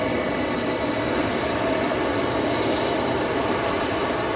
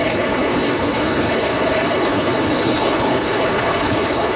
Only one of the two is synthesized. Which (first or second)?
second